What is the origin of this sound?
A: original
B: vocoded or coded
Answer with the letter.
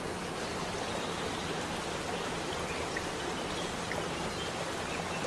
A